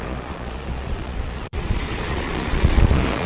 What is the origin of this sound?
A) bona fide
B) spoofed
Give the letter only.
B